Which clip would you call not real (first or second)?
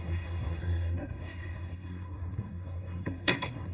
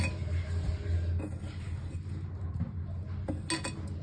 first